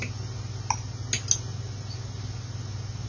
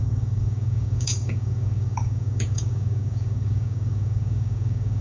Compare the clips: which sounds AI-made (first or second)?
second